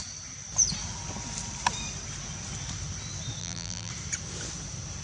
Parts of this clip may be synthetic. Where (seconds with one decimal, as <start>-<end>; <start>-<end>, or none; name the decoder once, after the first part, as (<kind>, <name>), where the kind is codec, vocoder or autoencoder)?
3.4-3.9 (vocoder, BigVGAN v2)